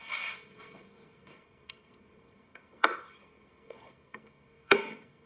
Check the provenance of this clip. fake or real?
fake